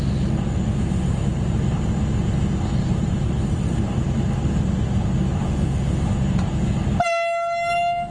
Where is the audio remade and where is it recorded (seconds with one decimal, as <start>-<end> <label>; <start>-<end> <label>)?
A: 0.0-2.8 recorded; 2.8-4.6 remade; 4.6-8.1 recorded